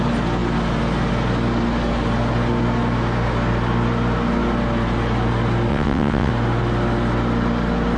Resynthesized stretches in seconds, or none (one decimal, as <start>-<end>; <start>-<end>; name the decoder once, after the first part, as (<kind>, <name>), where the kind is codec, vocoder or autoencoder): 5.7-6.3 (vocoder, WaveNeXt)

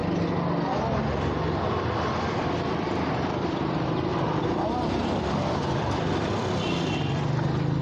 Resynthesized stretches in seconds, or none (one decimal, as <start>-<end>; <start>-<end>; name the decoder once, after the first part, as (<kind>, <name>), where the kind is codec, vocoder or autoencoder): 2.1-7.8 (vocoder, BigVGAN v2)

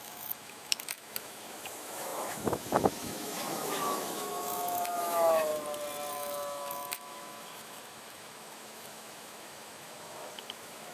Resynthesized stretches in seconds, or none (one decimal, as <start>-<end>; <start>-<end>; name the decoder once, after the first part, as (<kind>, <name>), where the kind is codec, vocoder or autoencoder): 0.0-5.5 (autoencoder, DAC-VAE); 6.1-10.9

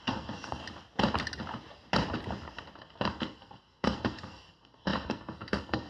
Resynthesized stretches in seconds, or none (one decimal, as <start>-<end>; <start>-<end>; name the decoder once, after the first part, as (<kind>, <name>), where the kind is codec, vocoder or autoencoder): 0.0-0.6 (codec, SNAC); 2.8-5.9

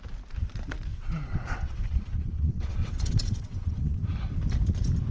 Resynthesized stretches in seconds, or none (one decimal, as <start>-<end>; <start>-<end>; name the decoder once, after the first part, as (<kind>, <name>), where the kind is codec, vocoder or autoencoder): 0.9-4.0 (vocoder, WaveNeXt)

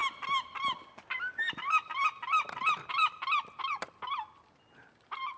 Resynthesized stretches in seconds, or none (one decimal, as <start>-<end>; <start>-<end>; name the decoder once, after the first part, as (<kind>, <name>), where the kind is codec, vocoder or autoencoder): none

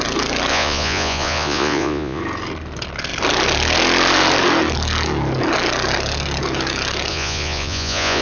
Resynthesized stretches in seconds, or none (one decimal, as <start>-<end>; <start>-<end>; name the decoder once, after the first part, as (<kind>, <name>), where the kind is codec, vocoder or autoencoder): 0.5-2.2 (vocoder, Vocos); 7.1-8.2